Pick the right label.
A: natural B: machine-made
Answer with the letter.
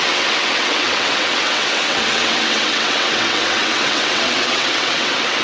B